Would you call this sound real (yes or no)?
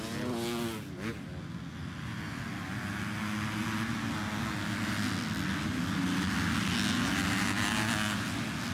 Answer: yes